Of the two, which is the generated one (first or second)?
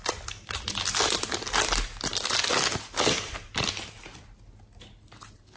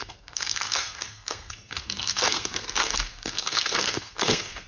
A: second